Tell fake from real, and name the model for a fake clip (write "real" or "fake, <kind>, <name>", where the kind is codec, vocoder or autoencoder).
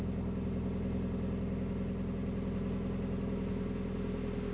real